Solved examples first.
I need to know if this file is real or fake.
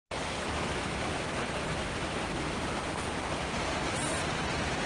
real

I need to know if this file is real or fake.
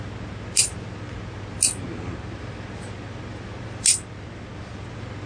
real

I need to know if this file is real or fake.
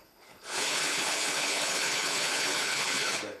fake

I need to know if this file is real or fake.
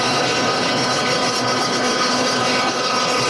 fake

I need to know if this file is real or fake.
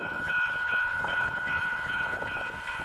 fake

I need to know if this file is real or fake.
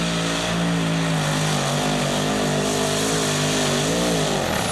real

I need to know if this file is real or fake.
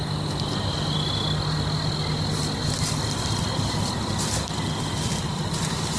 real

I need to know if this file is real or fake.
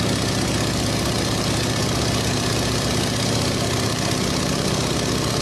real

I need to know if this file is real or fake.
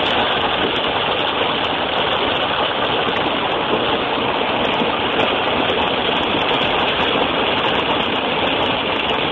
real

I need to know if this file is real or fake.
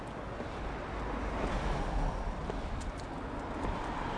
real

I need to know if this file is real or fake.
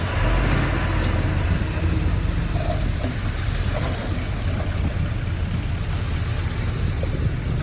real